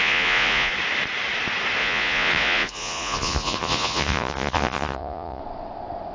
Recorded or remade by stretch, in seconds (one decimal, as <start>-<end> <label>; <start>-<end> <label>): 0.0-0.7 remade; 0.7-1.8 recorded; 1.8-5.4 remade; 5.4-6.1 recorded